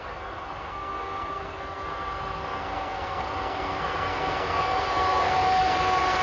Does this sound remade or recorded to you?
remade